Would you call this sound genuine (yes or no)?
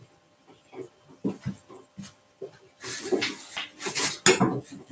yes